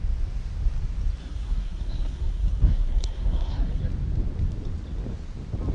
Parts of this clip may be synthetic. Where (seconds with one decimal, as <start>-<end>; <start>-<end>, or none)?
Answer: 1.2-3.8